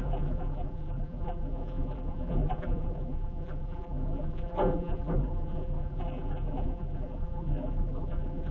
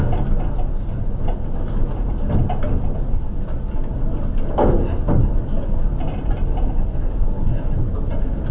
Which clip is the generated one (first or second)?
first